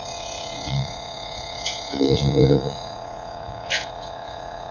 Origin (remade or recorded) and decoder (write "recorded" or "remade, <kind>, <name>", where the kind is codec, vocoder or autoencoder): remade, vocoder, Vocos